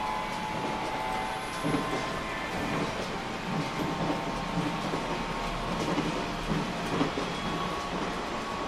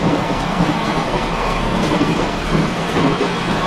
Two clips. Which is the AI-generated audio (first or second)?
second